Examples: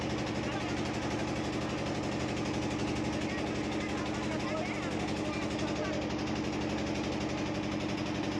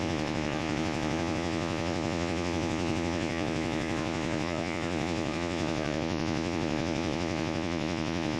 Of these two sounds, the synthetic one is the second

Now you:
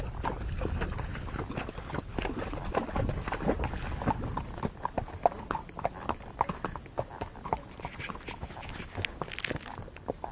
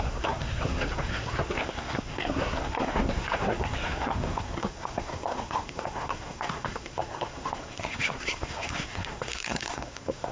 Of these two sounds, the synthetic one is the second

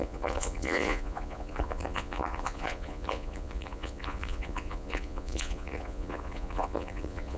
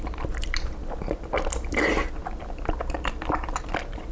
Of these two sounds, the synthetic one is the first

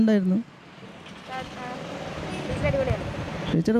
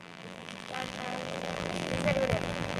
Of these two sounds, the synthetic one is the second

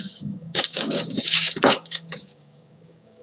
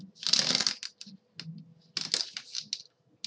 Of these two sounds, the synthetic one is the first